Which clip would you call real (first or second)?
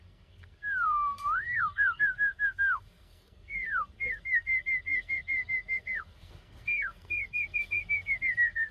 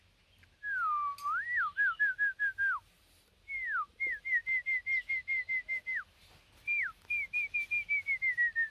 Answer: second